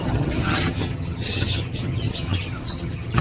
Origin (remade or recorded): remade